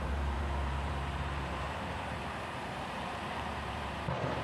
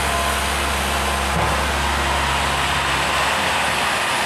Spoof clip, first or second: first